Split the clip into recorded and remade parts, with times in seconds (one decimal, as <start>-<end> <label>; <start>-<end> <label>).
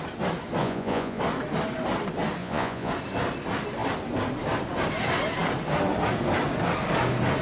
0.0-0.6 recorded; 0.6-1.2 remade; 1.2-2.4 recorded; 2.4-2.9 remade; 2.9-7.4 recorded